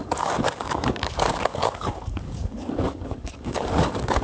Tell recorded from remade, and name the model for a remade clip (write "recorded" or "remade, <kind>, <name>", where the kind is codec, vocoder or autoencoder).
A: remade, codec, DAC